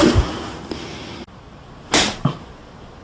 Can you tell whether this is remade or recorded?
recorded